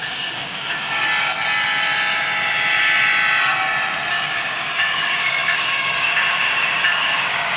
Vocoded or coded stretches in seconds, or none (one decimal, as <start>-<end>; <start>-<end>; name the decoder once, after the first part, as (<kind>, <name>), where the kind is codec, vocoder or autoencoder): 0.0-1.1 (codec, DAC); 4.1-7.6